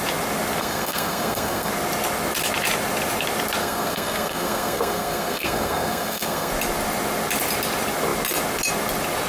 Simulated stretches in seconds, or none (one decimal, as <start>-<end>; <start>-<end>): 0.6-1.7; 3.6-6.5